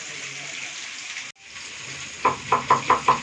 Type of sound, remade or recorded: recorded